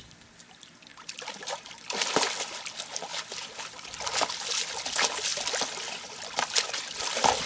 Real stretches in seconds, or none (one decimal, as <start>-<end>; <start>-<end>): 0.0-0.9; 1.7-5.3; 6.7-7.5